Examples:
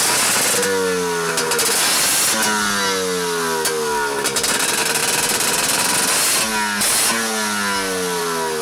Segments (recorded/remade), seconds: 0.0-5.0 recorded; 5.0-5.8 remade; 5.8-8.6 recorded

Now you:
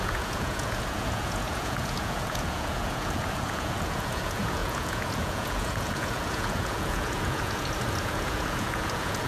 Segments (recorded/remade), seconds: 0.0-9.3 remade

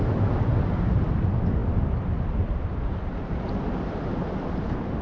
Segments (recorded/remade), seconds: 0.0-5.0 recorded

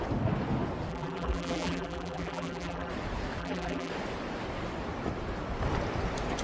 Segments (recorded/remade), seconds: 0.0-0.9 recorded; 0.9-2.9 remade; 2.9-3.4 recorded; 3.4-3.9 remade; 3.9-6.4 recorded

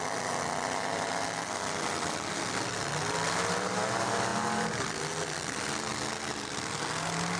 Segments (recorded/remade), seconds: 0.0-7.4 recorded

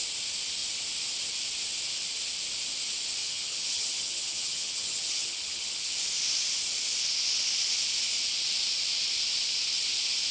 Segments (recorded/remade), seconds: 0.0-3.2 recorded; 3.2-5.9 remade; 5.9-10.3 recorded

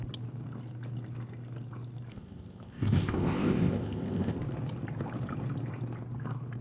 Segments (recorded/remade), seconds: 0.0-2.1 recorded; 2.1-4.4 remade; 4.4-6.6 recorded